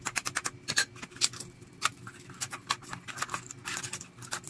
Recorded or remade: remade